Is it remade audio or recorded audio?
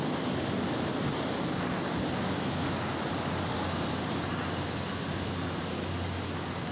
recorded